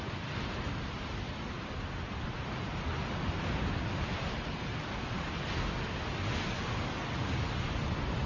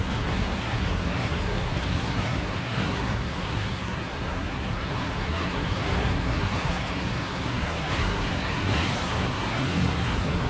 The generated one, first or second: second